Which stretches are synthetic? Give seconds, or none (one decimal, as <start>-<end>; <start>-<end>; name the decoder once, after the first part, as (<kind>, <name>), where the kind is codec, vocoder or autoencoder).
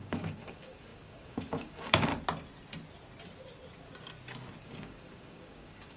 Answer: 0.0-2.1 (codec, DAC); 4.6-6.0